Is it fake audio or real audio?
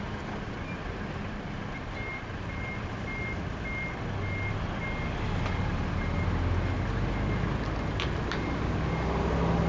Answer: real